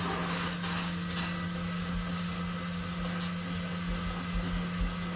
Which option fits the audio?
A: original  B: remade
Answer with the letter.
A